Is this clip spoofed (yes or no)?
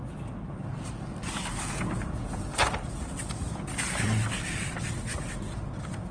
no